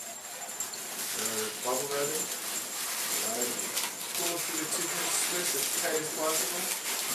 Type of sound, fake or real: real